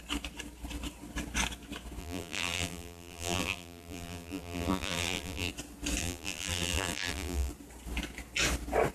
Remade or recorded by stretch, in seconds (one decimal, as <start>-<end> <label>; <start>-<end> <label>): 0.0-2.0 recorded; 2.0-5.5 remade; 5.5-6.0 recorded; 6.0-7.5 remade; 7.5-8.9 recorded